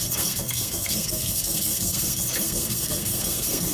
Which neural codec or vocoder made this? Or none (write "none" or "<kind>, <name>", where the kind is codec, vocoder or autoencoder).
codec, SNAC